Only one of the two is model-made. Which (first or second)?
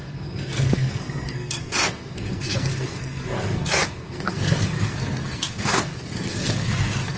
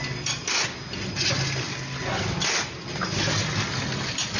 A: first